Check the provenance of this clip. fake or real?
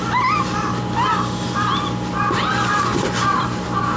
real